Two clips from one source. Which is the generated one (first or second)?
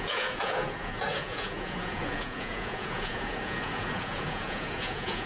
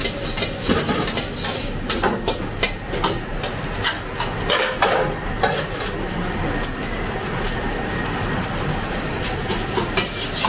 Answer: first